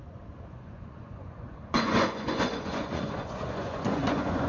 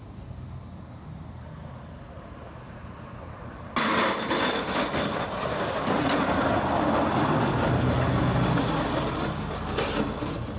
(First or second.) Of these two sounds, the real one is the second